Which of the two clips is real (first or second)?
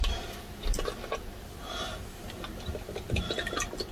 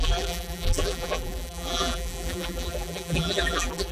first